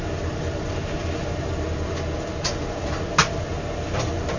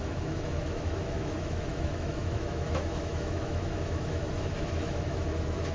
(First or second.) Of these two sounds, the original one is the first